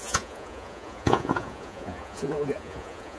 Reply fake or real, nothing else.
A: fake